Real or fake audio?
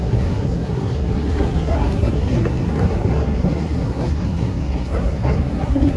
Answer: fake